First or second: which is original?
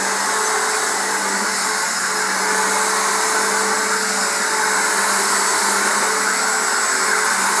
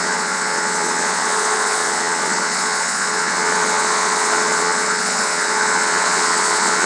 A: first